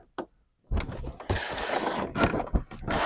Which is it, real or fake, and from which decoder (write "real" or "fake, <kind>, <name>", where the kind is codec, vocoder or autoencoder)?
real